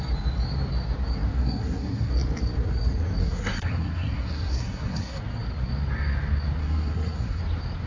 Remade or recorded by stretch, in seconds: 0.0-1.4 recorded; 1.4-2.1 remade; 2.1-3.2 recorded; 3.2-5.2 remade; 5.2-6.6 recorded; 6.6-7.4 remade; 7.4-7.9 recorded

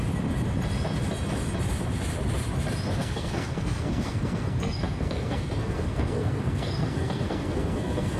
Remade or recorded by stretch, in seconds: 0.0-3.0 recorded; 3.0-8.2 remade

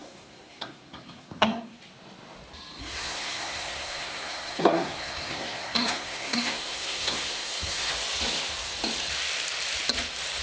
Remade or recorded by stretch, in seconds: 0.0-1.8 remade; 1.8-2.8 recorded; 2.8-7.9 remade; 7.9-10.4 recorded

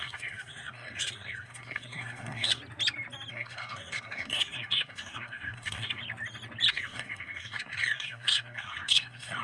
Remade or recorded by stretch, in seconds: 0.0-2.6 remade; 2.6-3.3 recorded; 3.3-6.0 remade; 6.0-6.7 recorded; 6.7-9.4 remade